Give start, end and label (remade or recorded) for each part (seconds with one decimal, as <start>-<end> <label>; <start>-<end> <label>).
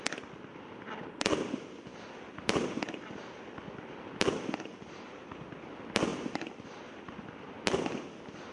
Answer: 0.0-8.5 recorded